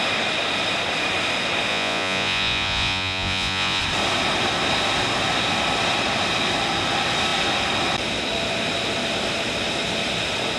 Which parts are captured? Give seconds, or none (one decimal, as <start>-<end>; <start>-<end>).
0.0-1.7; 3.8-10.6